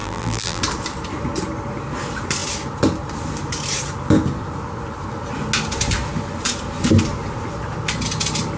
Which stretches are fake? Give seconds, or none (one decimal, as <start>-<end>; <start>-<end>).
0.0-0.6

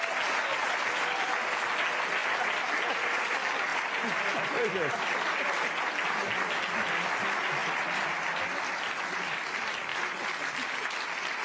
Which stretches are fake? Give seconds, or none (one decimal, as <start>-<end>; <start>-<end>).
3.7-5.1; 7.6-8.4; 9.9-10.5

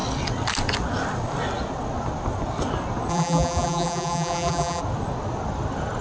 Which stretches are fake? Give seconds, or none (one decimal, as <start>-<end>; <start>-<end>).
3.1-4.8

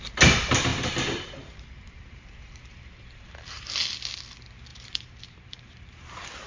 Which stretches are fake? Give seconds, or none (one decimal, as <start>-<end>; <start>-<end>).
0.7-3.7; 4.7-6.1

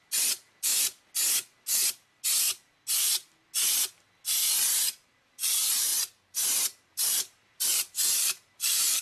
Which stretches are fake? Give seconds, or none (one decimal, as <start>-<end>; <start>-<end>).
0.0-0.7; 4.5-5.9; 6.6-9.0

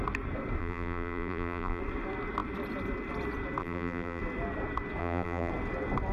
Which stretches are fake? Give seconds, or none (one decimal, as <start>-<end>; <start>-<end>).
0.6-1.8; 3.6-4.2; 5.0-5.5